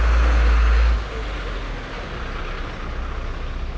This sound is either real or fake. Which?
real